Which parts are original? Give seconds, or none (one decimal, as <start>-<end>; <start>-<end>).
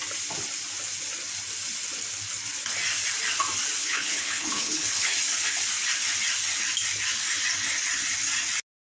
0.0-3.8; 5.1-8.9